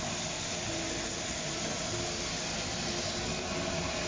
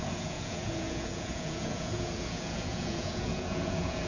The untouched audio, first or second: first